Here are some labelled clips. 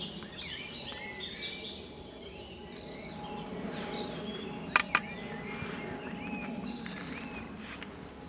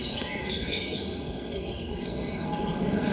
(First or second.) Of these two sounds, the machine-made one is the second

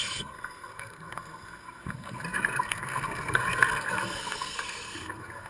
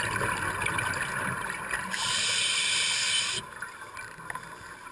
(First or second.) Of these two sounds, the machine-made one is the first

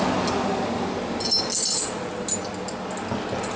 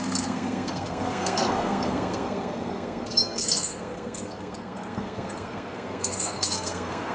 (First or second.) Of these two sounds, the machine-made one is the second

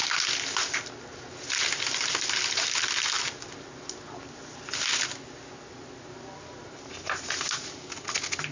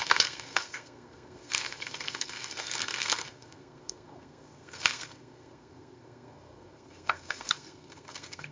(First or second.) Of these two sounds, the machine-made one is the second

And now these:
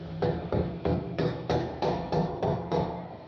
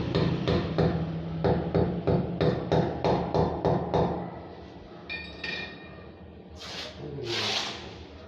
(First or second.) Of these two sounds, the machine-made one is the first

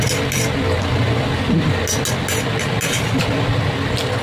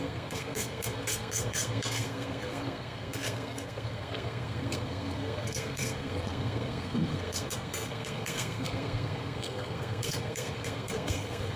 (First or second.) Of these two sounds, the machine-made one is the second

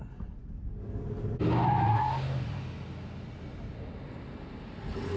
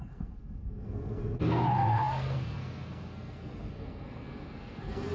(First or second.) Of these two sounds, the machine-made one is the second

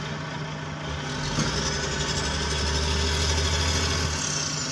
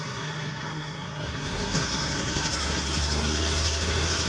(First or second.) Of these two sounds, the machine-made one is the second